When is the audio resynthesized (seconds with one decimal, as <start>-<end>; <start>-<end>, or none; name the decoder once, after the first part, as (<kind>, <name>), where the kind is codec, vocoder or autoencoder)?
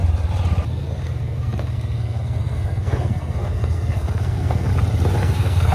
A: 0.7-4.7 (codec, SNAC); 5.2-5.7